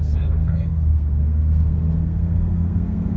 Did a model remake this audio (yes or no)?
yes